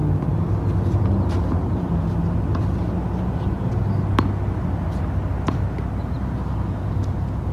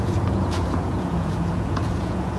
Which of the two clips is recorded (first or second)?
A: first